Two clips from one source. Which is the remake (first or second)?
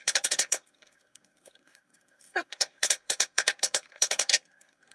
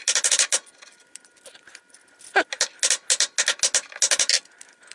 first